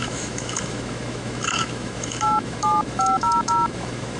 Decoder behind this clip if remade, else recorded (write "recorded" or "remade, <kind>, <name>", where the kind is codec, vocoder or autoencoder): remade, autoencoder, DAC-VAE